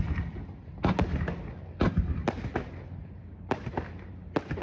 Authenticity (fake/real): real